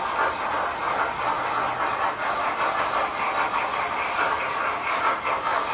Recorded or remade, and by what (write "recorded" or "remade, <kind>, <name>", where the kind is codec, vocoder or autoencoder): recorded